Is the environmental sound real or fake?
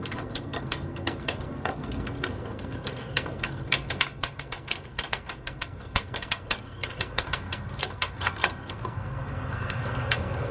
fake